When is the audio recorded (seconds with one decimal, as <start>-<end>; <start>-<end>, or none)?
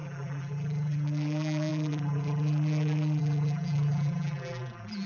none